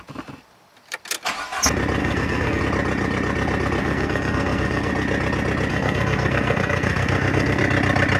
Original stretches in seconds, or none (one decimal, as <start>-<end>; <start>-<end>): 0.0-2.0; 2.6-3.8; 4.9-5.7; 7.6-8.2